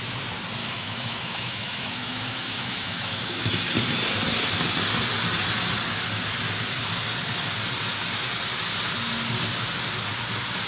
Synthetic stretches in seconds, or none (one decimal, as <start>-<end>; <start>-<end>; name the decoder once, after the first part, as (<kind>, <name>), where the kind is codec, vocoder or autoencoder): 0.6-3.5 (autoencoder, DAC-VAE)